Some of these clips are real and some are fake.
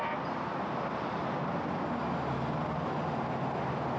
real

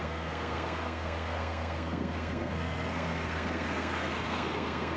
fake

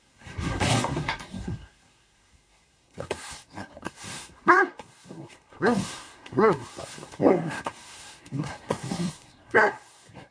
fake